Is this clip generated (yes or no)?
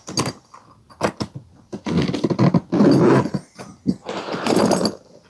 no